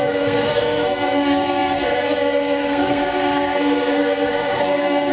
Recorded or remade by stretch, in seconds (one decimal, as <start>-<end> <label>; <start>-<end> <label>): 0.0-5.1 remade